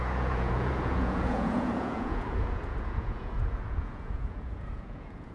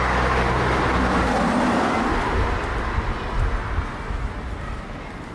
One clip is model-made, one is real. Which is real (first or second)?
second